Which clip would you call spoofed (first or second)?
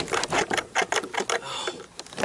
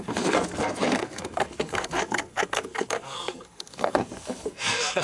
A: second